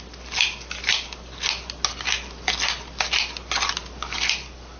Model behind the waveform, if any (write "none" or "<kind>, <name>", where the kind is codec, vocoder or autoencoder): none